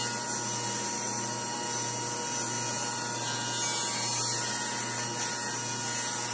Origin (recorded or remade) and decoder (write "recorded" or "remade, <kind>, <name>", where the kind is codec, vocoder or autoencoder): recorded